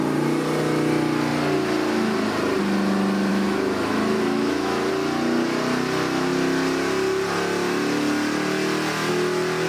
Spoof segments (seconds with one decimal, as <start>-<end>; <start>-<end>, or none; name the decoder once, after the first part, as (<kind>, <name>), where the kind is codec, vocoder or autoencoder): 3.3-4.9 (autoencoder, DAC-VAE)